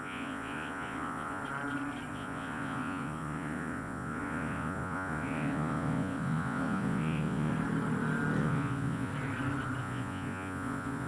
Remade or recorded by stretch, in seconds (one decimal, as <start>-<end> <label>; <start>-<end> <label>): 0.0-1.4 remade; 1.4-2.1 recorded; 2.1-7.5 remade; 7.5-8.4 recorded; 8.4-9.1 remade; 9.1-9.8 recorded; 9.8-11.1 remade